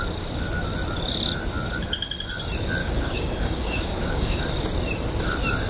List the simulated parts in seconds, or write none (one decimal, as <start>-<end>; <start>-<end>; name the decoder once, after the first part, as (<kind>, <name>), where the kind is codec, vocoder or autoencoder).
2.8-4.4 (codec, DAC)